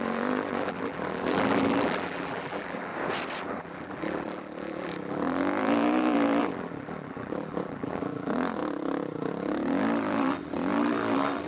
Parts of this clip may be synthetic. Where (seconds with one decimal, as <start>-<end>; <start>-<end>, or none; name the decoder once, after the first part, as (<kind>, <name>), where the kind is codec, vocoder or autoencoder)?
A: 0.0-2.9 (vocoder, BigVGAN v2); 3.4-11.5